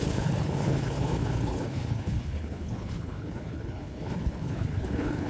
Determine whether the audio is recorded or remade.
remade